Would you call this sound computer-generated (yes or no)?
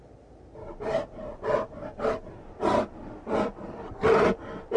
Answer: no